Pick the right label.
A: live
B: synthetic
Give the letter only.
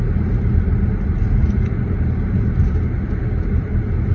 A